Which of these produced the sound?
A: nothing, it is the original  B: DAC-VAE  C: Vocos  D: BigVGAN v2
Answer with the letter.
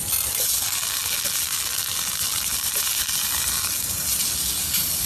A